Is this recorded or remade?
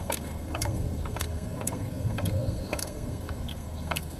remade